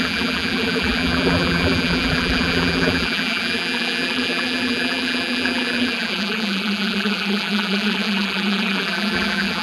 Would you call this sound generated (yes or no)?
yes